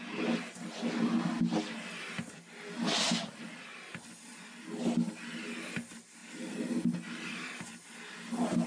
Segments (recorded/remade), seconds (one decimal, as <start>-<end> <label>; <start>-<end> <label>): 0.0-8.7 recorded